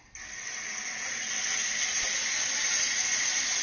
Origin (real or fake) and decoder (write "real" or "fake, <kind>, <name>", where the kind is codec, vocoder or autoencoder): real